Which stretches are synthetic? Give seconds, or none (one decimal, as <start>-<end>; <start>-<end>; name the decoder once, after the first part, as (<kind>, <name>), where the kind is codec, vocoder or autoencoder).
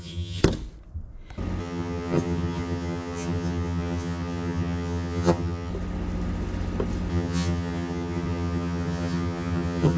0.0-0.4 (vocoder, HiFi-GAN); 1.6-5.7; 7.1-10.0